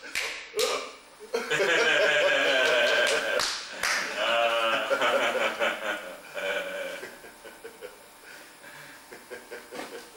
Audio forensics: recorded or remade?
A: recorded